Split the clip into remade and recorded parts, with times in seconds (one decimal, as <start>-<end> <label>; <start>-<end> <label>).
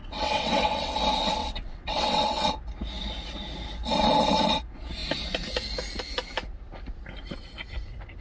0.0-1.0 remade; 1.0-1.4 recorded; 1.4-2.5 remade; 2.5-8.2 recorded